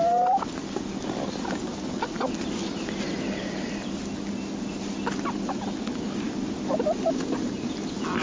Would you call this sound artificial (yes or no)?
no